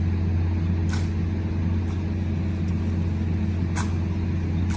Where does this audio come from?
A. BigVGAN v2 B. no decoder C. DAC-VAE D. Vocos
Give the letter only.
B